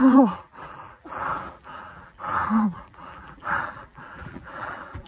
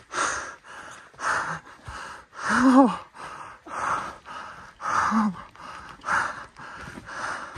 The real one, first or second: second